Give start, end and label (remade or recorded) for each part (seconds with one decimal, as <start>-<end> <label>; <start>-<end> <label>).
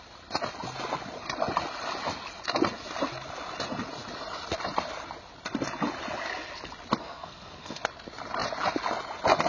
0.0-7.0 recorded; 7.0-7.8 remade; 7.8-9.5 recorded